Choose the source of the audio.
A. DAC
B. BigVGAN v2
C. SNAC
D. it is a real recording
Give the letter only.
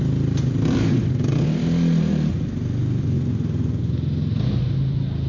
D